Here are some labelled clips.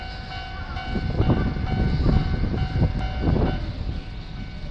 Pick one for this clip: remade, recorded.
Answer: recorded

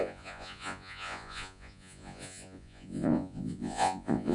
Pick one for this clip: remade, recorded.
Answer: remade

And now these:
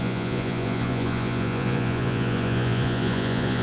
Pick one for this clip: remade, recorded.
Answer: remade